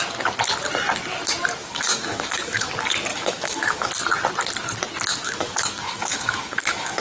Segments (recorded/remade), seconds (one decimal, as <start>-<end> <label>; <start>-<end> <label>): 0.0-1.6 recorded; 1.6-2.7 remade; 2.7-3.1 recorded; 3.1-3.9 remade; 3.9-5.1 recorded; 5.1-7.0 remade